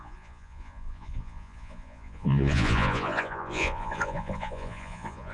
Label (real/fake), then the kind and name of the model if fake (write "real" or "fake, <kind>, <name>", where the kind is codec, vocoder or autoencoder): fake, vocoder, Vocos